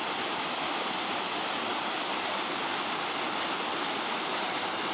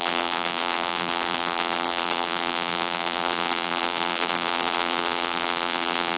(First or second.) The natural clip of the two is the first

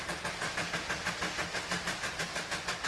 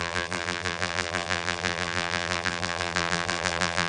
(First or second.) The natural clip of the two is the first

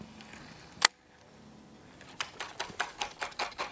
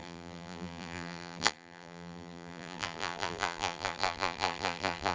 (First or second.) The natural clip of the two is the first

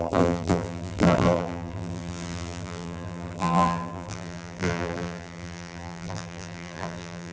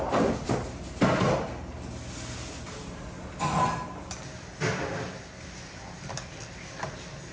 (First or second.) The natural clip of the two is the second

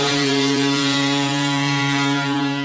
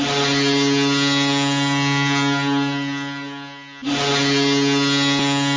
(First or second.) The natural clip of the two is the second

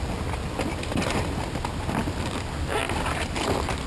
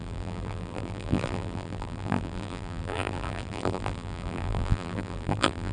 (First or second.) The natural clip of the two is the first